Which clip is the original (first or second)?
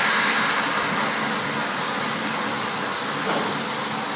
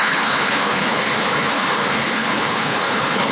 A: first